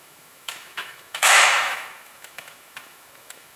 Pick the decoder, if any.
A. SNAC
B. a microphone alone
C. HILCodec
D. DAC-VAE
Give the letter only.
D